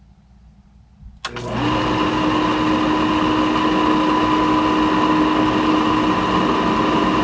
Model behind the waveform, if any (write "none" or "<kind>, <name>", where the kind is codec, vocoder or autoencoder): none